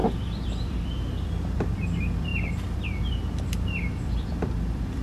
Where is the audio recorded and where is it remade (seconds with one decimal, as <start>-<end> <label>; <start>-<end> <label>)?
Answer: 0.0-5.0 remade